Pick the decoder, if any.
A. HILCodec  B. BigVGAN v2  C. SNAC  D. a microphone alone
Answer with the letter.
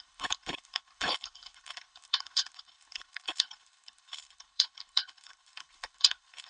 A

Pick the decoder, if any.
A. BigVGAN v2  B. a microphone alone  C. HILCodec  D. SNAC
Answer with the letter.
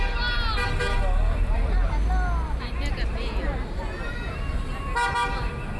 B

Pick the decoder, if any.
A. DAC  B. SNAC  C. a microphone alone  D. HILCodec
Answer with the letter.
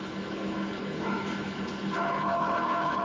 D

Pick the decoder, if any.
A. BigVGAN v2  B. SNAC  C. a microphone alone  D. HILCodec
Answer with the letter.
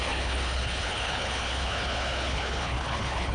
D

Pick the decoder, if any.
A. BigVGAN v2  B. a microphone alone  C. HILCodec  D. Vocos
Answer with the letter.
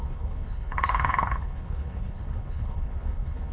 C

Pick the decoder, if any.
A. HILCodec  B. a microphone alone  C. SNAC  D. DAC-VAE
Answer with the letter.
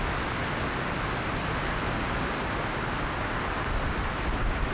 B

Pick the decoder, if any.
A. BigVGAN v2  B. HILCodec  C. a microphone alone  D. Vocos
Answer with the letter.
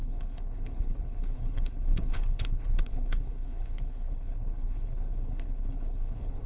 B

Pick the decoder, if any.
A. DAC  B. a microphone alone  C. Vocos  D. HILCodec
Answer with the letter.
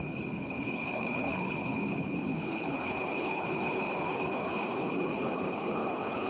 D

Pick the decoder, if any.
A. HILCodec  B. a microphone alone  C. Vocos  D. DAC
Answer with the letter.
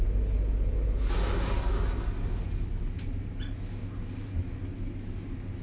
B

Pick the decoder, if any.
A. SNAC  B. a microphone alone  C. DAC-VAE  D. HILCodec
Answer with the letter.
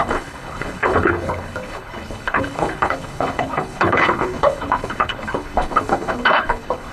D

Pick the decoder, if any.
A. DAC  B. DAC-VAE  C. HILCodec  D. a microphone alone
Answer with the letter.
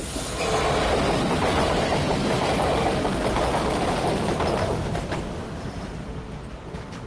D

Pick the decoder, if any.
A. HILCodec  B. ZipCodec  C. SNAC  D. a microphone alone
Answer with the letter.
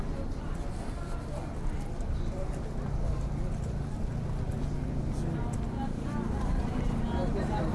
D